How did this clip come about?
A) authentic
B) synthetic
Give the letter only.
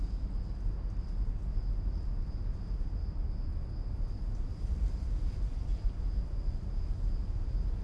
A